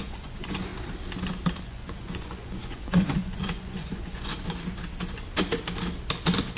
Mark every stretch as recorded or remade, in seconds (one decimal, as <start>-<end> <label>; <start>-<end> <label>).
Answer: 0.0-0.7 remade; 0.7-1.6 recorded; 1.6-4.3 remade; 4.3-6.6 recorded